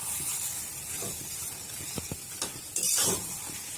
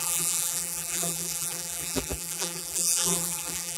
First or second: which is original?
first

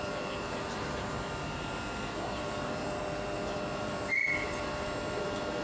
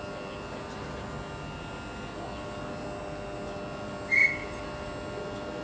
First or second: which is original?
second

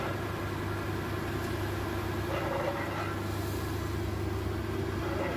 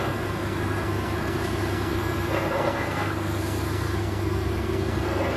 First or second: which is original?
first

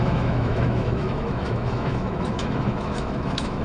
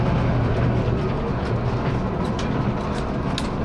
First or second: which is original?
second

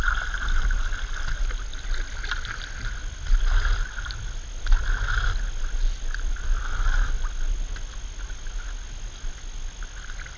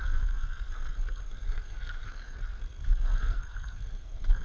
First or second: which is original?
first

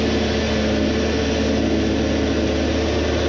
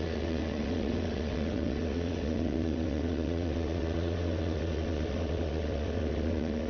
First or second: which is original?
first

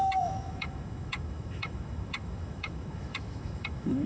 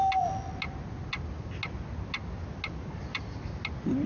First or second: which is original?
second